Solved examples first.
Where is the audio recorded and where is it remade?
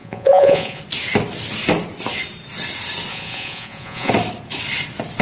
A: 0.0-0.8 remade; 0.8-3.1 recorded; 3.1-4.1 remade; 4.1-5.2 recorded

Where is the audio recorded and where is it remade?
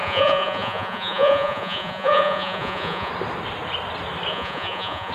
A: 0.0-3.1 remade; 3.1-4.3 recorded; 4.3-5.1 remade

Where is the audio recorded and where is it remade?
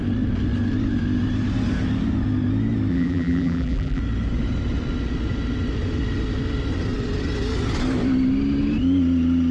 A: 0.0-2.9 recorded; 2.9-4.0 remade; 4.0-9.5 recorded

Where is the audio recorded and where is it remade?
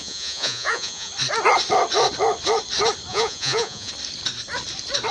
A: 0.0-1.1 remade; 1.1-3.1 recorded; 3.1-3.9 remade; 3.9-5.1 recorded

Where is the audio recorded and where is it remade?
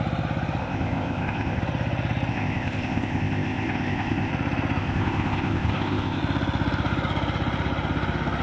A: 0.0-0.6 recorded; 0.6-1.6 remade; 1.6-2.3 recorded; 2.3-4.3 remade; 4.3-4.8 recorded; 4.8-6.2 remade; 6.2-8.4 recorded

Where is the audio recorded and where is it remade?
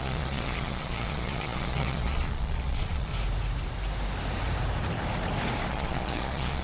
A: 0.0-3.1 remade; 3.1-5.7 recorded; 5.7-6.6 remade